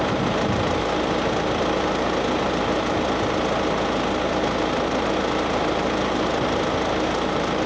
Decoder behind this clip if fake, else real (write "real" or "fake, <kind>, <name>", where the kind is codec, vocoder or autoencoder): real